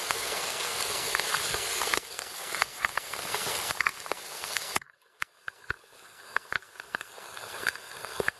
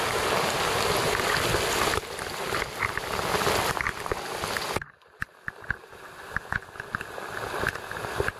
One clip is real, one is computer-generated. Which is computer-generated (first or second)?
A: first